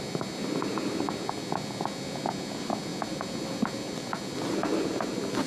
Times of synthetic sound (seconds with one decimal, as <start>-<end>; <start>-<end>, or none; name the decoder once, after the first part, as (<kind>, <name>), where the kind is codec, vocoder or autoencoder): none

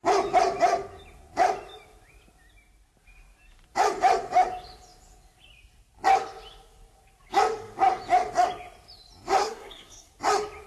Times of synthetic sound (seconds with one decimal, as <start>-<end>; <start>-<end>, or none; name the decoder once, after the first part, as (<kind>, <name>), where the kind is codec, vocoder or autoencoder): 9.4-10.1 (codec, SNAC)

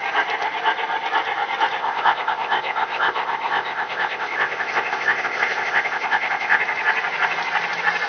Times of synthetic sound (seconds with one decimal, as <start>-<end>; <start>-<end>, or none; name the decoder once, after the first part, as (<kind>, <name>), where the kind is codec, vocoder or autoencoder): 1.8-6.6 (codec, ZipCodec)

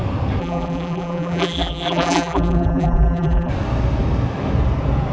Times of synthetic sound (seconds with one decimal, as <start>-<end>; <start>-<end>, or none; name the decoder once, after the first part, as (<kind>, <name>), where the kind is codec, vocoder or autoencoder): 0.4-3.5 (vocoder, BigVGAN v2)